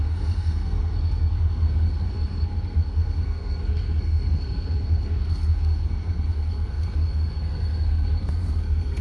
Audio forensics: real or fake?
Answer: fake